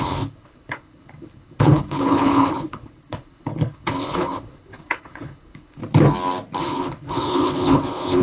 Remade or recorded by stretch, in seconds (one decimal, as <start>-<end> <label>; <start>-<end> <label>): 0.0-5.8 remade; 5.8-6.6 recorded; 6.6-8.2 remade